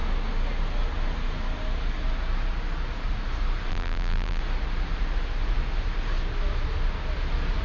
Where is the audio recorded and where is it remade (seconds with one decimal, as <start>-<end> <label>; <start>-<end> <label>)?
0.0-3.7 recorded; 3.7-4.4 remade; 4.4-7.6 recorded